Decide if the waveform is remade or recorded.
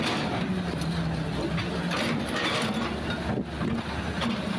recorded